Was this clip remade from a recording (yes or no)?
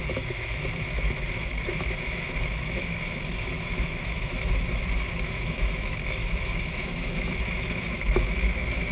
yes